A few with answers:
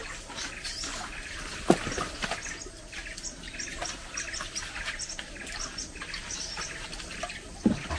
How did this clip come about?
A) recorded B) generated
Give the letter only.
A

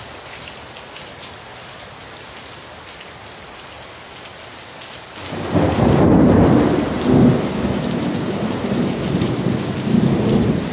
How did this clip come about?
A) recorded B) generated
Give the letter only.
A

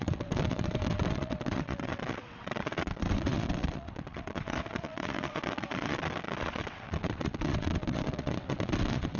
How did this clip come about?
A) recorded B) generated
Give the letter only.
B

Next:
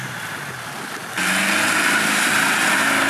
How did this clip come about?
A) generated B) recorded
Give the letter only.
B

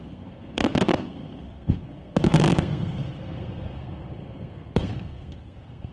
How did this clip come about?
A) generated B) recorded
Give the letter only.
A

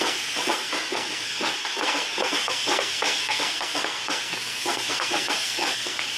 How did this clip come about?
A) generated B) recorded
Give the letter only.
A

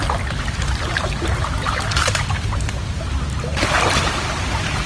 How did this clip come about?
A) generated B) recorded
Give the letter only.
B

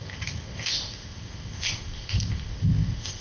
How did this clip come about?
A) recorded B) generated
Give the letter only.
B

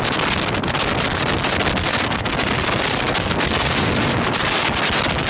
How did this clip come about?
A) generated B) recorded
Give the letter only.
B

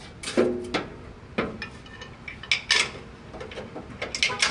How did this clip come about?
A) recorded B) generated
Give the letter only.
A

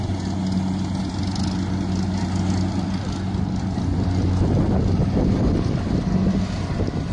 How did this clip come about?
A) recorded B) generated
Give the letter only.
A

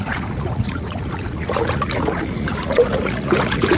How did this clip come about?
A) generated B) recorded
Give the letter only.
A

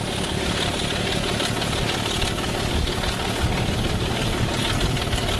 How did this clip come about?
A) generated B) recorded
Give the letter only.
B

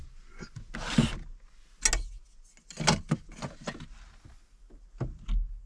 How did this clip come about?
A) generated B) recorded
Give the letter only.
B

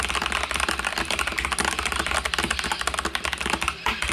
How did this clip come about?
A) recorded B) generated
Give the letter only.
A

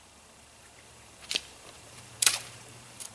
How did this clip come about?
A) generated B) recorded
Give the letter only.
A